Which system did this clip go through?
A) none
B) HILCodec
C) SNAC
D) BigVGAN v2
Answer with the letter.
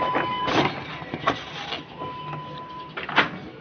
A